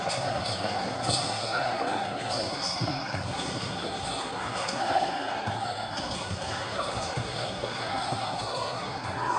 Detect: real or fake fake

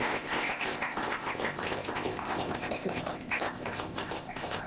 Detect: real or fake fake